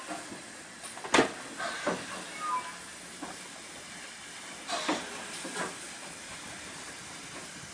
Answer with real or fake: real